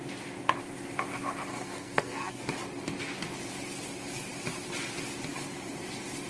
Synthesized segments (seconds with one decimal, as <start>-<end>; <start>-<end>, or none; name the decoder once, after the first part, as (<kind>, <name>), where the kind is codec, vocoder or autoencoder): 1.5-2.4 (codec, SNAC)